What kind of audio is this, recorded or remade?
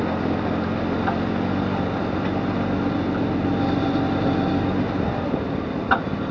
recorded